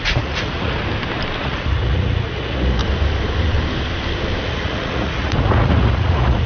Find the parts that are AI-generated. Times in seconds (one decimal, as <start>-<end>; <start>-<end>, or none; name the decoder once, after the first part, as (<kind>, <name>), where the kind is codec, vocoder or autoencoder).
0.0-0.8 (vocoder, Vocos); 1.4-2.8; 4.4-6.5